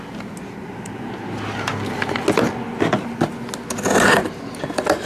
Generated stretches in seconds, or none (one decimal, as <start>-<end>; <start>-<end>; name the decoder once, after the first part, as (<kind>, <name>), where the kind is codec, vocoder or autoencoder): none